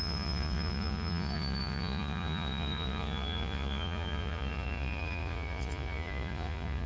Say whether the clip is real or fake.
fake